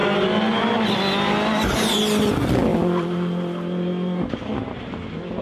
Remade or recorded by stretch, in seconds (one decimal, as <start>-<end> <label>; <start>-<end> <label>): 0.0-5.4 recorded